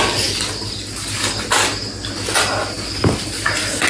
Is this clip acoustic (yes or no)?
yes